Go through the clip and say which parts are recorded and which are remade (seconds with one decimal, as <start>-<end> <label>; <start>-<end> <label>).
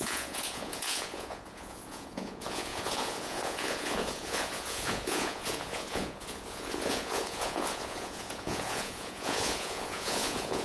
0.0-10.6 remade